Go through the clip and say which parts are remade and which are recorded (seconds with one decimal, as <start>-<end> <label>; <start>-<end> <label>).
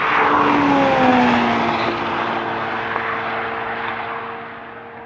0.0-5.1 recorded